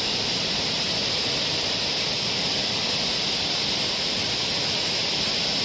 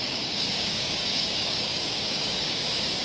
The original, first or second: first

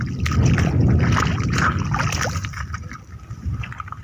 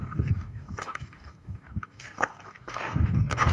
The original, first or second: first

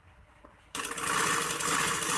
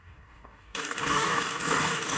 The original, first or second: first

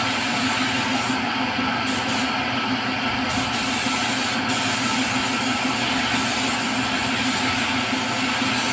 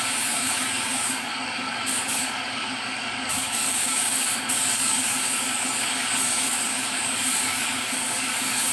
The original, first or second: first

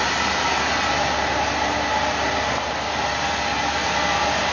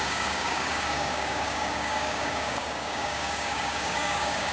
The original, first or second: first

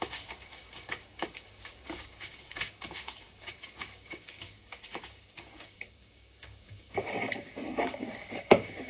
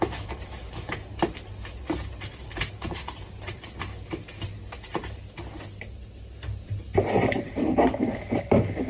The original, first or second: second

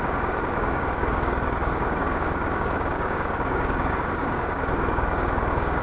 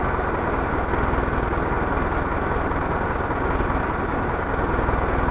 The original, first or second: second